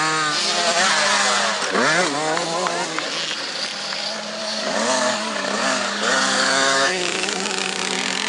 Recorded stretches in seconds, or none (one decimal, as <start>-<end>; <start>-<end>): 0.0-4.4